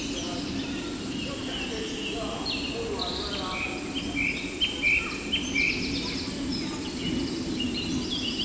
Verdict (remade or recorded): recorded